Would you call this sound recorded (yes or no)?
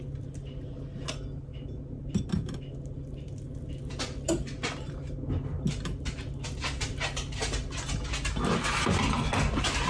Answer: yes